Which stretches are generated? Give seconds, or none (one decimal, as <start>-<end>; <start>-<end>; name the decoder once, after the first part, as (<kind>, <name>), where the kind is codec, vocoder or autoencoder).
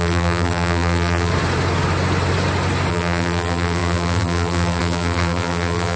0.0-1.3 (vocoder, BigVGAN v2); 2.9-6.0